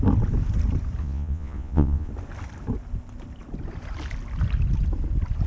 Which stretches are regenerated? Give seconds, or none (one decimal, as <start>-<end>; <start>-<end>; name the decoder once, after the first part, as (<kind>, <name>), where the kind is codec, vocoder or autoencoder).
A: 1.0-2.1 (vocoder, Vocos)